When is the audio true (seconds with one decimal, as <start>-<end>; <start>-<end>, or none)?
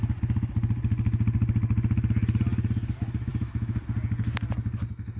0.0-3.3; 3.8-5.2